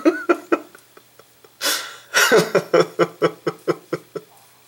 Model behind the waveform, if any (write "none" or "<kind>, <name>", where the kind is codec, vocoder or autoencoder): none